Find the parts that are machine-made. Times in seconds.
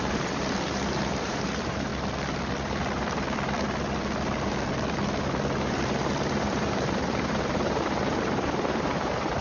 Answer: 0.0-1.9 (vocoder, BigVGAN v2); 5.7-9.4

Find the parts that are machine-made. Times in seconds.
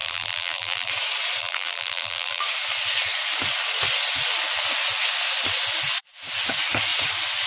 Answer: 0.0-0.9 (vocoder, BigVGAN v2); 1.4-2.4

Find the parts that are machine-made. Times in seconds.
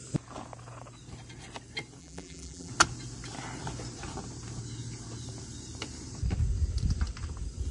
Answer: 2.0-2.7 (vocoder, BigVGAN v2)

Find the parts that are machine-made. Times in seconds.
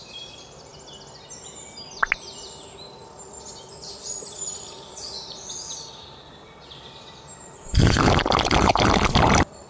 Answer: 0.0-0.7 (vocoder, BigVGAN v2); 3.7-8.2; 9.1-9.7